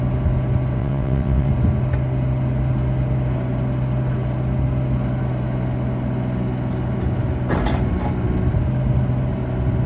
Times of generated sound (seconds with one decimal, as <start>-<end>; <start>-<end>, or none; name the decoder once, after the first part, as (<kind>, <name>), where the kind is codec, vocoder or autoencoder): 0.8-1.5 (vocoder, WaveNeXt)